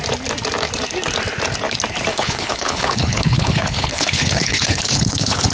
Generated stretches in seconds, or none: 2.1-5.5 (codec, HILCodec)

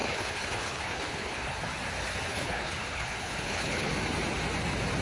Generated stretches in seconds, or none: 0.0-1.6 (codec, HILCodec); 2.3-3.9

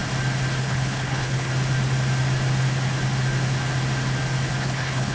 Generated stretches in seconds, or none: 0.6-1.5 (codec, HILCodec); 4.6-5.1

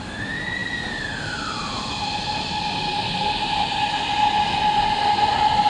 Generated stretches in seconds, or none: none

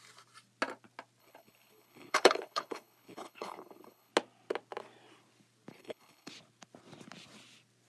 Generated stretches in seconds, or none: 1.2-4.1 (codec, HILCodec); 5.7-6.3

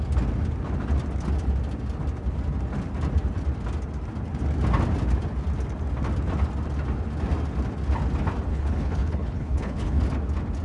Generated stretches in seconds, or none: 8.5-10.0 (codec, HILCodec)